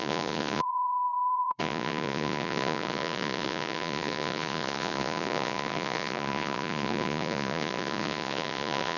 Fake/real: fake